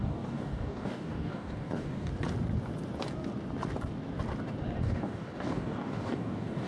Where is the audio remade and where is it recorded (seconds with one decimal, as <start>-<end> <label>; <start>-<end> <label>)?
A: 0.0-2.1 remade; 2.1-4.8 recorded; 4.8-6.7 remade